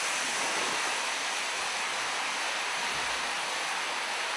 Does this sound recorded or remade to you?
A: recorded